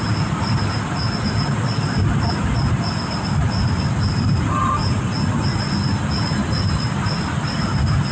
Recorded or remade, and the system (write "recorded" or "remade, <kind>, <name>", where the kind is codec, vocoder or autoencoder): recorded